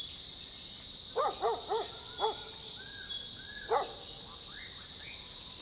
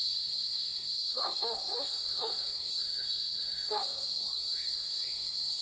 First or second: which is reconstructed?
second